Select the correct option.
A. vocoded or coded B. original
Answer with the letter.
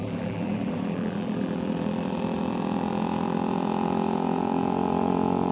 A